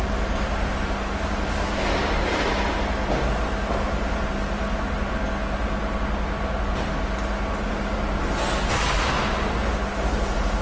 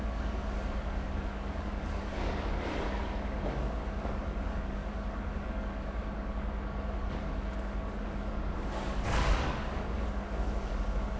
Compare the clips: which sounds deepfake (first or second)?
second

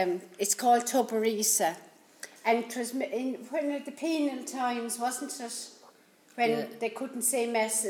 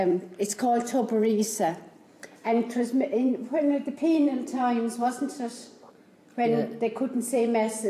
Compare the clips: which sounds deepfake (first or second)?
second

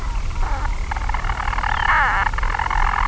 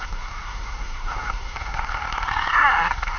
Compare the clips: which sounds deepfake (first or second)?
second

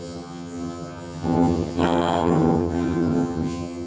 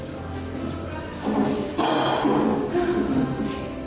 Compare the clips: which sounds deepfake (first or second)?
first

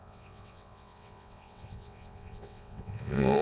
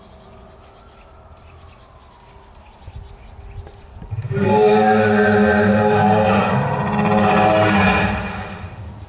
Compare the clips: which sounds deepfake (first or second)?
first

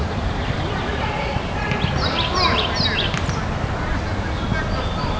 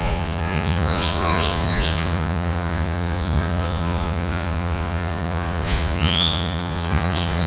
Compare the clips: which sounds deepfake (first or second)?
second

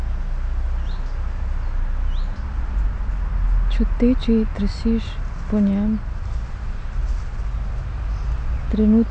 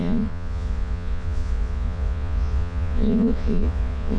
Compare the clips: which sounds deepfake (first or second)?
second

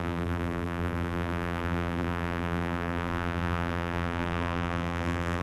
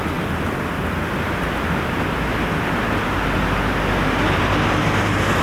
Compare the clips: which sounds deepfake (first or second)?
first